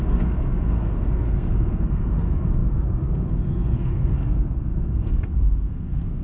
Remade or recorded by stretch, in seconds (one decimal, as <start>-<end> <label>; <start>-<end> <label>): 0.0-6.2 remade